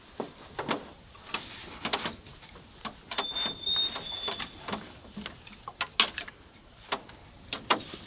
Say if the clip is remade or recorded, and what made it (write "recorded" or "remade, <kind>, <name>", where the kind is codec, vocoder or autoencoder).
recorded